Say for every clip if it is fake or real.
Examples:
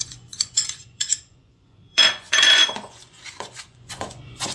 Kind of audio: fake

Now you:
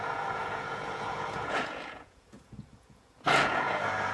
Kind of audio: fake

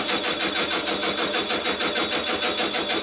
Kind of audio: real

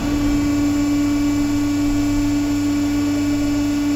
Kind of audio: real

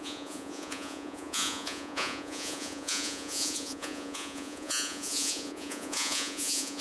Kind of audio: fake